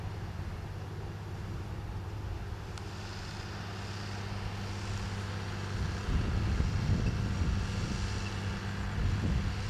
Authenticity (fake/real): real